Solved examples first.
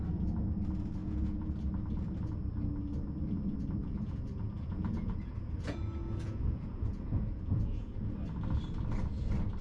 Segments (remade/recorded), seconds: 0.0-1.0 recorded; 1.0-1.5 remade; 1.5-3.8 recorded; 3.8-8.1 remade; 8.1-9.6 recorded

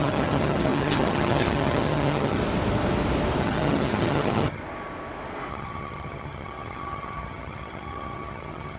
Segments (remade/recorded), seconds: 0.0-2.4 remade; 2.4-3.4 recorded; 3.4-4.6 remade; 4.6-5.5 recorded; 5.5-8.8 remade

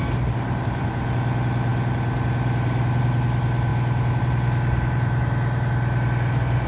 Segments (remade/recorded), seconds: 0.0-6.7 recorded

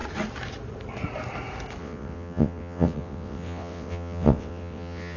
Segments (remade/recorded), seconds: 0.0-1.8 recorded; 1.8-5.2 remade